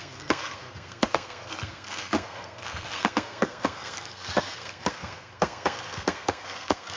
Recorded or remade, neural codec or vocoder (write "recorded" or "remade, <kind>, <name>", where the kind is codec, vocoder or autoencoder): remade, codec, SNAC